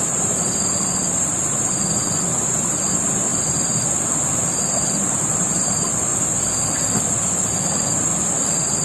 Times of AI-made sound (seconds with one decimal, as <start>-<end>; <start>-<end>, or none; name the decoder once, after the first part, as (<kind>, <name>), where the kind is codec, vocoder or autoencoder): 0.0-3.3 (vocoder, BigVGAN v2); 4.7-6.1; 7.1-8.8